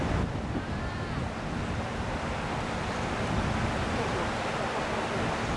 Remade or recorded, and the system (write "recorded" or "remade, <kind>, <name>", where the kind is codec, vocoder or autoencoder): recorded